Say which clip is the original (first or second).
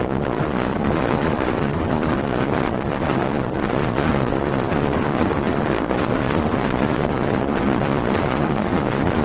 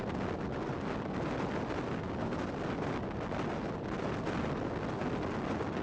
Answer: second